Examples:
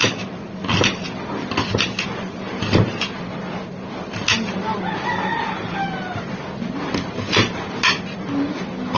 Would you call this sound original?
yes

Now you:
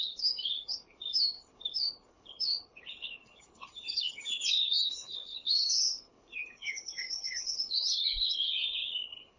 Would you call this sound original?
no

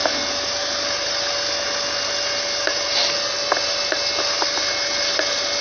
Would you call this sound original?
yes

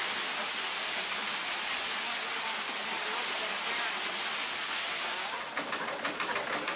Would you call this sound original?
yes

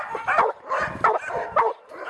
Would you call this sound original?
yes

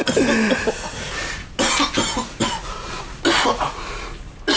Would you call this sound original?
yes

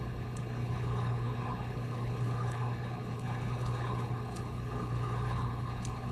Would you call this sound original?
no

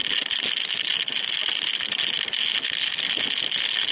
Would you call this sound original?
yes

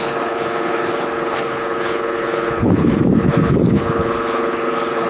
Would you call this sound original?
no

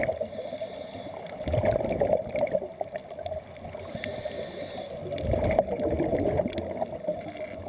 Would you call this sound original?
yes